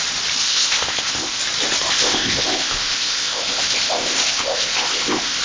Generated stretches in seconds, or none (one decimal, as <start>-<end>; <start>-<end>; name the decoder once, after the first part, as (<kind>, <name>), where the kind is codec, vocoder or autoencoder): 0.4-1.4 (codec, ZipCodec); 1.9-5.4